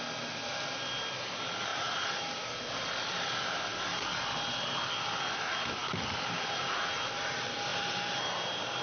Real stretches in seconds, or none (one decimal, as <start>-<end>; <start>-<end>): 0.0-1.7; 2.6-7.7; 8.2-8.8